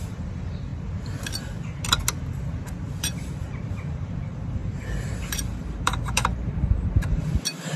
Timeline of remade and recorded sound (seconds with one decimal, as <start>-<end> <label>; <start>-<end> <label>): 0.0-0.7 remade; 0.7-3.0 recorded; 3.0-7.8 remade